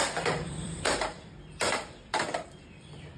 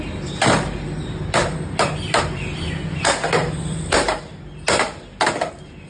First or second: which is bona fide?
second